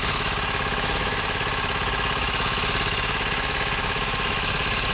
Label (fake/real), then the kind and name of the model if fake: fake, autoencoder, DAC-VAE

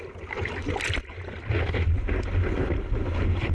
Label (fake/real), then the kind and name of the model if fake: real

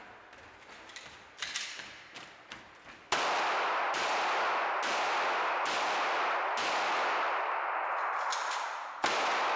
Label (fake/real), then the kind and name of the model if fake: real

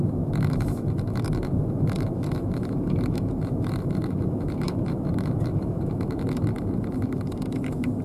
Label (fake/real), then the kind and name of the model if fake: fake, autoencoder, DAC-VAE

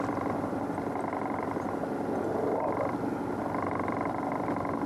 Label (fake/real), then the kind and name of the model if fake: real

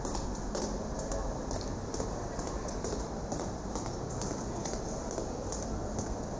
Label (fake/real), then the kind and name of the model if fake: real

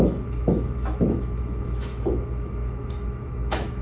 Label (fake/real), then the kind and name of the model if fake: fake, autoencoder, DAC-VAE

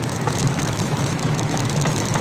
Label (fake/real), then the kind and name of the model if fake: fake, autoencoder, DAC-VAE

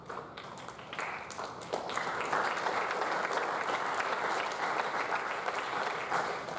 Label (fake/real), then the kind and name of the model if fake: real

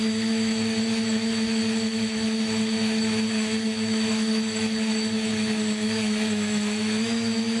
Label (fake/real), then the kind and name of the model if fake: fake, autoencoder, DAC-VAE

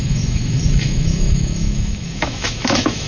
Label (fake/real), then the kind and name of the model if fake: fake, autoencoder, DAC-VAE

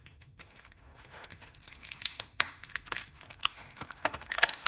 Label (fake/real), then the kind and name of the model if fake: fake, autoencoder, DAC-VAE